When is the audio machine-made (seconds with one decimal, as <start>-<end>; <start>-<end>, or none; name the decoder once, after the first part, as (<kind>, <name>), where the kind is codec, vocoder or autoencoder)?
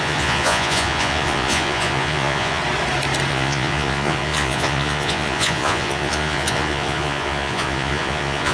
0.0-2.6 (vocoder, Vocos); 3.3-8.5